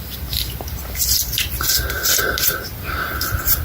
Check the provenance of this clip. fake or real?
real